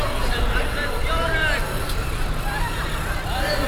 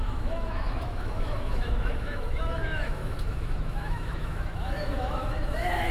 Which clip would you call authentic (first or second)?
first